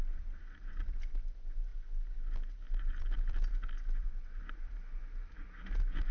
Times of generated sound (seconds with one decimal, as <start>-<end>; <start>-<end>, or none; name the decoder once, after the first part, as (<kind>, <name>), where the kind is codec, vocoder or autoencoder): none